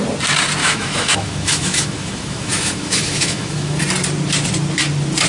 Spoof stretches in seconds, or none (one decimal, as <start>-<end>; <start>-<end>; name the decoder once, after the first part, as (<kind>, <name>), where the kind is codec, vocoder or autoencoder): 0.6-3.8 (autoencoder, DAC-VAE)